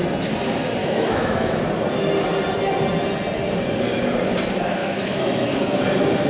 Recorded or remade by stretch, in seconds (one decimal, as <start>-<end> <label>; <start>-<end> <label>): 0.0-0.8 recorded; 0.8-1.6 remade; 1.6-4.8 recorded; 4.8-5.8 remade; 5.8-6.3 recorded